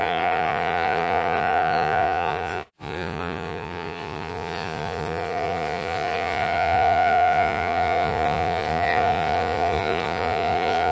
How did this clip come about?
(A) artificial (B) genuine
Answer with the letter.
A